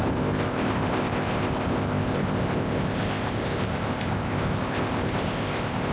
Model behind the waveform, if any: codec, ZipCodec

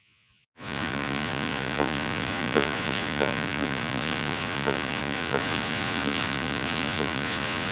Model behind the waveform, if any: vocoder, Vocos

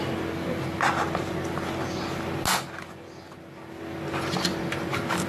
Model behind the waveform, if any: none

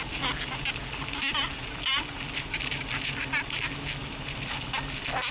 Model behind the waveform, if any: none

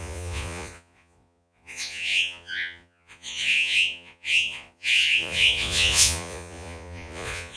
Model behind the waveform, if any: vocoder, Vocos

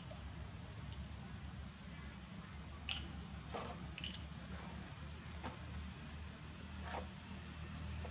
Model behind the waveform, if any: none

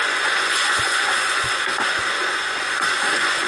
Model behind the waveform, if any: vocoder, Vocos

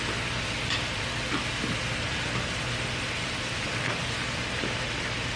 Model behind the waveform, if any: none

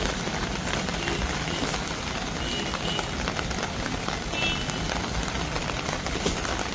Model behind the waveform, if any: none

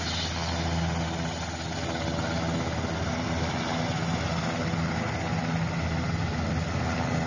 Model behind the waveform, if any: none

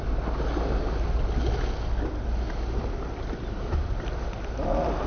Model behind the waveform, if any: none